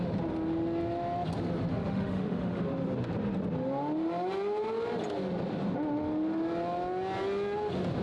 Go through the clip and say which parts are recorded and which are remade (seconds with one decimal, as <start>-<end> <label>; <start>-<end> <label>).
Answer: 0.0-1.7 recorded; 1.7-2.6 remade; 2.6-8.0 recorded